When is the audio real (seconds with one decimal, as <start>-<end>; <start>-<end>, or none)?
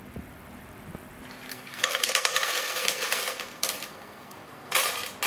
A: 0.0-1.5; 4.7-5.3